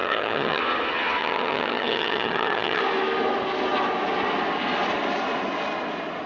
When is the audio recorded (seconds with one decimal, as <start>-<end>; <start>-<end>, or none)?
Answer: 0.6-1.2; 2.8-6.3